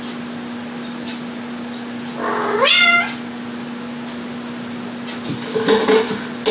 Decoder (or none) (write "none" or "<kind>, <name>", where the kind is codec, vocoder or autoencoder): none